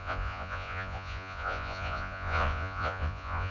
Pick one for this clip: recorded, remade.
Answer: remade